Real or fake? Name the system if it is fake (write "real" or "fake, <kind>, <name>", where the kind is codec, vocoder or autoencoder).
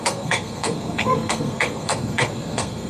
fake, codec, SNAC